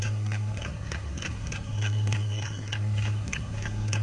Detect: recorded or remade remade